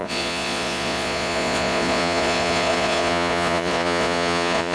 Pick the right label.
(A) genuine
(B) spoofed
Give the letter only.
B